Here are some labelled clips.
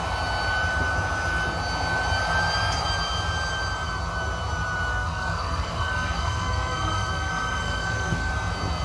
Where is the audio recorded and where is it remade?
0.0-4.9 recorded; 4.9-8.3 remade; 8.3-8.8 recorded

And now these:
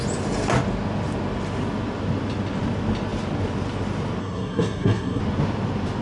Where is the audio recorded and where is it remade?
0.0-4.2 recorded; 4.2-5.2 remade; 5.2-6.0 recorded

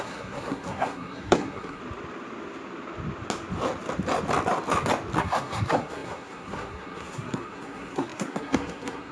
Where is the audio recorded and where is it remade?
0.0-1.8 remade; 1.8-5.2 recorded; 5.2-9.1 remade

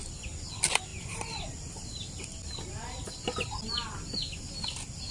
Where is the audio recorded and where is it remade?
0.0-5.1 recorded

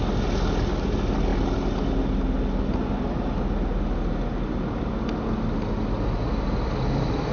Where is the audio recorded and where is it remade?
0.0-7.3 recorded

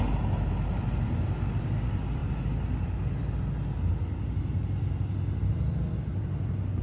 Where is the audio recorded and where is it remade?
0.0-6.8 recorded

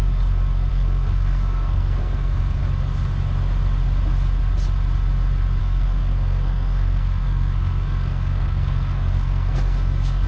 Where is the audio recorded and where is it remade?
0.0-0.7 recorded; 0.7-2.6 remade; 2.6-5.6 recorded; 5.6-10.3 remade